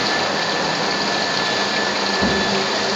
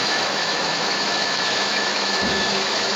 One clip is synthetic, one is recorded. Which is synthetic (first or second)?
second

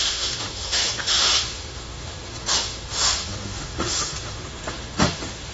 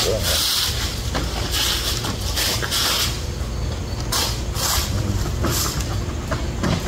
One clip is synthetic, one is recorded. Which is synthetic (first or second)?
first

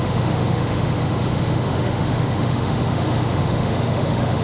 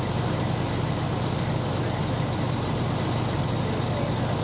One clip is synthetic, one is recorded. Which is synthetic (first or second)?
first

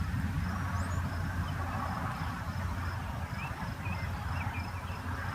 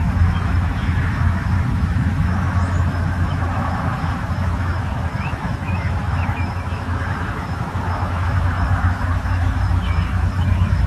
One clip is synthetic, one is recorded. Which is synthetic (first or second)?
second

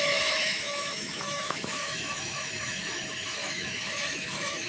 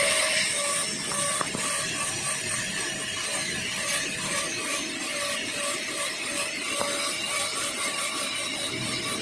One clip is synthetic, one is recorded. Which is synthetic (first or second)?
first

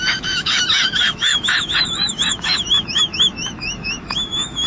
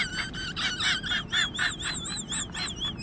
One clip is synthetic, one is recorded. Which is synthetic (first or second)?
first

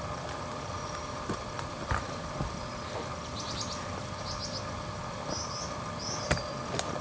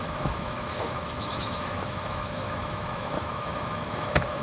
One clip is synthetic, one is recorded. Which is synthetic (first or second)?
second